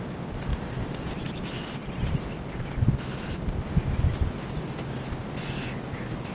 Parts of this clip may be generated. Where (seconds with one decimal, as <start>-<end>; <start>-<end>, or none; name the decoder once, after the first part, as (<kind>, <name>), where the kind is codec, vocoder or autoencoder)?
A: none